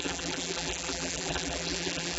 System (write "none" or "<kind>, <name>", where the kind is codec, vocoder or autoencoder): vocoder, BigVGAN v2